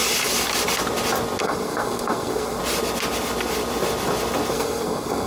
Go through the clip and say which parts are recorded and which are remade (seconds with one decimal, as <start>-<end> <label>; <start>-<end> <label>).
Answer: 0.0-1.4 recorded; 1.4-2.6 remade; 2.6-4.5 recorded; 4.5-5.3 remade